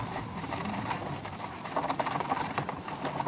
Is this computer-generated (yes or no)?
yes